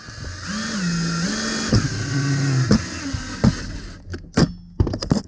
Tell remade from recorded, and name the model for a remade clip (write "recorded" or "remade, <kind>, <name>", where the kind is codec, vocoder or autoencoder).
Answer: recorded